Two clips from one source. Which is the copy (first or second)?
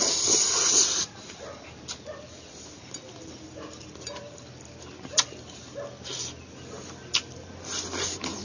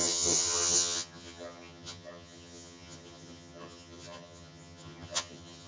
second